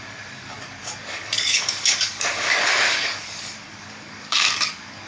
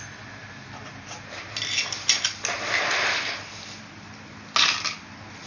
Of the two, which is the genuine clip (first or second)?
second